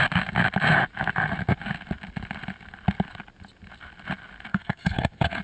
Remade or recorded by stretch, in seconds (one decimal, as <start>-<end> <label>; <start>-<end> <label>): 0.0-4.5 recorded; 4.5-5.4 remade